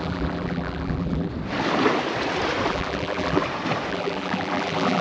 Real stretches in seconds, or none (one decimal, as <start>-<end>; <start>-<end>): 1.3-2.7; 3.4-3.9